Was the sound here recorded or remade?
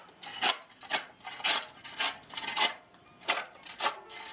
recorded